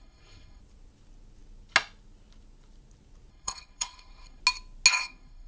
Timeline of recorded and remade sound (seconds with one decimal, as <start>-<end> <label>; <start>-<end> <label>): 0.0-0.6 remade; 0.6-3.3 recorded; 3.3-4.4 remade; 4.4-4.9 recorded; 4.9-5.5 remade